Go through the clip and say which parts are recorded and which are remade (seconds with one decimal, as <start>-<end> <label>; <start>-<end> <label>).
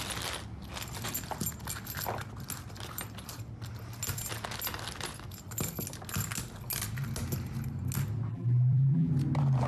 0.0-8.3 recorded; 8.3-9.1 remade; 9.1-9.7 recorded